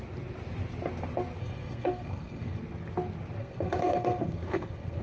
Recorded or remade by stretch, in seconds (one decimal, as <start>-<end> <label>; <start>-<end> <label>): 0.0-1.4 recorded; 1.4-2.6 remade; 2.6-3.4 recorded; 3.4-5.0 remade